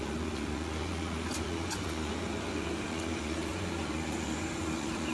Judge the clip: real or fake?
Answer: fake